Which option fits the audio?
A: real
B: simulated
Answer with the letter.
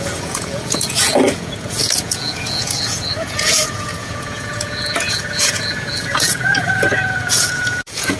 B